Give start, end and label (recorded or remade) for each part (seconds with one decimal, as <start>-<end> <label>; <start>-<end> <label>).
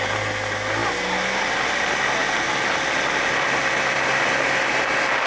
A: 0.0-5.3 recorded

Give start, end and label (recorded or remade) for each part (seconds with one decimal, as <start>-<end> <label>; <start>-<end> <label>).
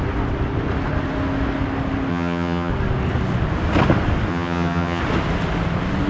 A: 0.0-2.1 recorded; 2.1-2.7 remade; 2.7-4.3 recorded; 4.3-5.0 remade; 5.0-6.1 recorded